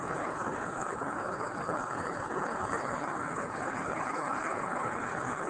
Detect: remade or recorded remade